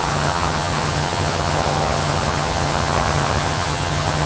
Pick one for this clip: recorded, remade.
remade